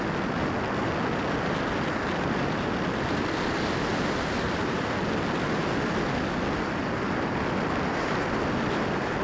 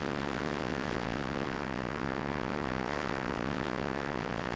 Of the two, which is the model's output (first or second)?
second